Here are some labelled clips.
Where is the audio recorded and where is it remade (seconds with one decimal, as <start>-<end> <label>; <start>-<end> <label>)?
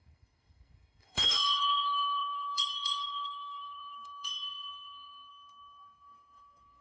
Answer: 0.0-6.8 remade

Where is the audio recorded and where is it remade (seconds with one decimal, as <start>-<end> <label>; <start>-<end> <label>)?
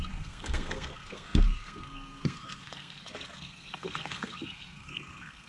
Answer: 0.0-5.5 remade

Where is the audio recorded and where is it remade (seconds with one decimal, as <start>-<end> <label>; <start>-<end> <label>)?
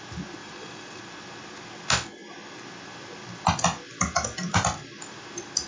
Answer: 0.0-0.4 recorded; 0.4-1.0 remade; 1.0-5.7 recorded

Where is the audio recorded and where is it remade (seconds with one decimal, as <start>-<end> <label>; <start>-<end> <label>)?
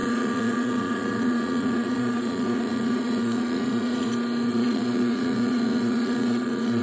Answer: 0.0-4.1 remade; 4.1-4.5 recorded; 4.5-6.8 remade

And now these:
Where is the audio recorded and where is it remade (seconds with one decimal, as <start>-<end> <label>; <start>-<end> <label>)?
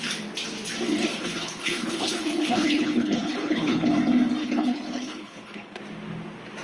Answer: 0.0-1.1 recorded; 1.1-3.9 remade; 3.9-4.4 recorded; 4.4-5.8 remade; 5.8-6.6 recorded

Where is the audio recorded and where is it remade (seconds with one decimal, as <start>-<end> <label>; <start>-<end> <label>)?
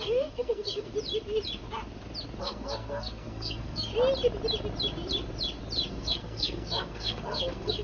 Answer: 0.0-0.9 remade; 0.9-2.4 recorded; 2.4-3.9 remade; 3.9-5.9 recorded; 5.9-7.8 remade